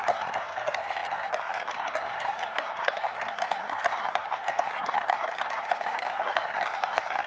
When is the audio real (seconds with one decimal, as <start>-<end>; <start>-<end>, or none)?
none